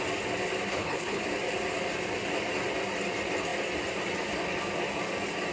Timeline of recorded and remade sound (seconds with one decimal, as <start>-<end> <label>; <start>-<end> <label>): 0.0-0.7 recorded; 0.7-1.2 remade; 1.2-5.5 recorded